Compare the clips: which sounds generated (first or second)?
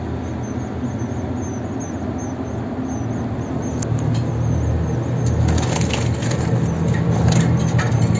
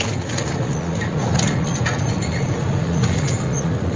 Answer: second